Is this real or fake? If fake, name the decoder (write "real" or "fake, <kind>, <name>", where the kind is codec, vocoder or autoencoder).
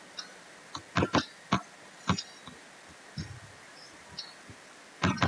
real